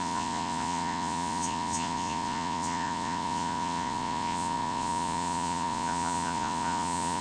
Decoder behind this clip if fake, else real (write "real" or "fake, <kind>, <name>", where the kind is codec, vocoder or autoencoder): fake, vocoder, Vocos